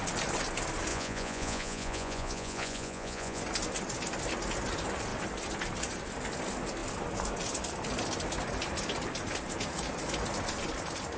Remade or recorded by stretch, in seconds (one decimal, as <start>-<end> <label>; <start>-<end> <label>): 0.0-0.9 recorded; 0.9-3.4 remade; 3.4-11.2 recorded

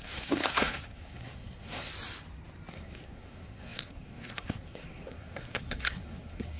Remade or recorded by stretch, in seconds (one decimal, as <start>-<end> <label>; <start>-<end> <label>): 0.0-1.9 remade; 1.9-2.7 recorded; 2.7-6.6 remade

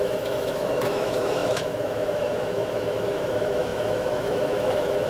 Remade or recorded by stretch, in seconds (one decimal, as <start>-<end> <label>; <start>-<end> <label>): 0.0-5.1 remade